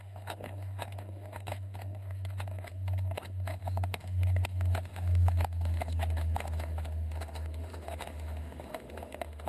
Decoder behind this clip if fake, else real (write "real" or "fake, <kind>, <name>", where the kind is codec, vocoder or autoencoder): fake, autoencoder, DAC-VAE